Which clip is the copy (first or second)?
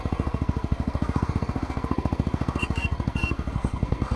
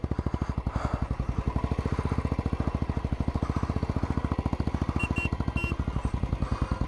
first